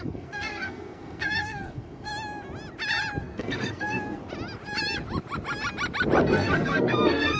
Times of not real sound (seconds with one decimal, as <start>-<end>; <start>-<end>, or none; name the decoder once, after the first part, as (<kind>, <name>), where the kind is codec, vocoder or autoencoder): 0.0-2.1 (codec, SNAC); 3.2-4.2; 6.2-7.4